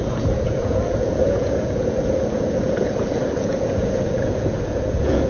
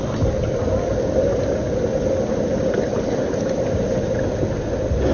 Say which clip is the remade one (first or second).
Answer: first